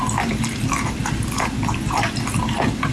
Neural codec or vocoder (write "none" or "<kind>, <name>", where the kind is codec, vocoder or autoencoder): vocoder, BigVGAN v2